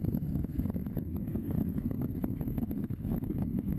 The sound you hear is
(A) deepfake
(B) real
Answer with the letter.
A